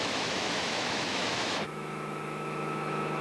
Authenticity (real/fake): fake